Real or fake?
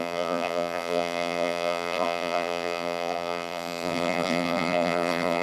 fake